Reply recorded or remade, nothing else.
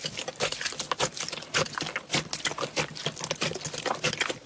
recorded